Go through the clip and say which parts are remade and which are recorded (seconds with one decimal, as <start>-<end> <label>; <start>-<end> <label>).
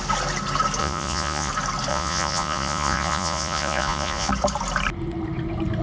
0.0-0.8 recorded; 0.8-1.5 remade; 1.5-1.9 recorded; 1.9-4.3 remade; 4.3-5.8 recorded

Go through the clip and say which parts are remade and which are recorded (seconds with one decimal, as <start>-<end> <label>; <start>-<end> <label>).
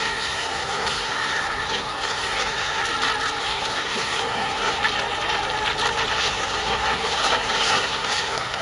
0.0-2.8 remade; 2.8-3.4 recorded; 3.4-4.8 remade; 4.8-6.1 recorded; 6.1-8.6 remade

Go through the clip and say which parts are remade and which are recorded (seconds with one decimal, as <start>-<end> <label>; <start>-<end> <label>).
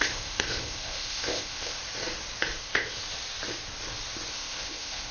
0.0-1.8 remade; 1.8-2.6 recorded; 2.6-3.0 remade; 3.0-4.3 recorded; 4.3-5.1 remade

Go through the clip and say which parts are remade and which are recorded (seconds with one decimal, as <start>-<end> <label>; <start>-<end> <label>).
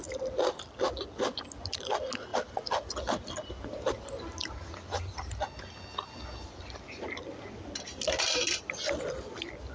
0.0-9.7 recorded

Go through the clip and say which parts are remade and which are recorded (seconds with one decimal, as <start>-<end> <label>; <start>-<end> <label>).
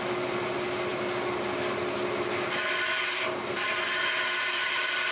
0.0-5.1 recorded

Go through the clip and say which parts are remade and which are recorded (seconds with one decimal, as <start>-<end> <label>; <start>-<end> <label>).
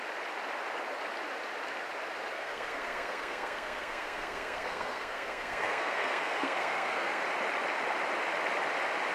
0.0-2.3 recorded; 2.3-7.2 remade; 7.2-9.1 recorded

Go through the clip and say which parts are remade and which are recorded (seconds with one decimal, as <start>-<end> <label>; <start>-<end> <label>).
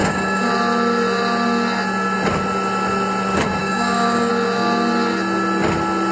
0.0-0.5 remade; 0.5-3.6 recorded; 3.6-4.3 remade; 4.3-6.1 recorded